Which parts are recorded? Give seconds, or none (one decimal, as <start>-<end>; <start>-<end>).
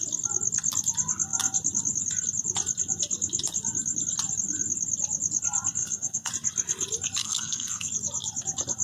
0.0-5.8; 6.3-7.2; 7.9-8.8